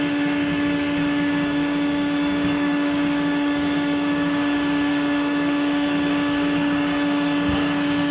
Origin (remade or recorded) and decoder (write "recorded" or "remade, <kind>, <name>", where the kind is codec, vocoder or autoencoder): remade, codec, DAC